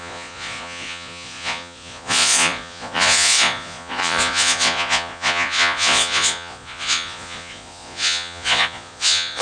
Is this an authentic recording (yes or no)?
no